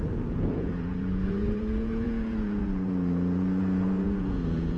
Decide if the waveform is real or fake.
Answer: fake